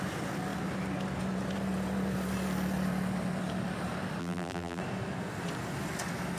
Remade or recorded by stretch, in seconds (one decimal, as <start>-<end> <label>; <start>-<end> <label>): 0.0-4.2 recorded; 4.2-4.8 remade; 4.8-6.4 recorded